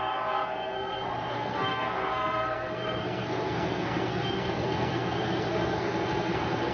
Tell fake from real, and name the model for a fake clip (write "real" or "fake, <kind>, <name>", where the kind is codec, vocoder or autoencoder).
fake, codec, SNAC